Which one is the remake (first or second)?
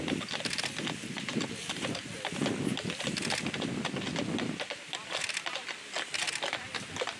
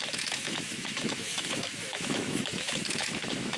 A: second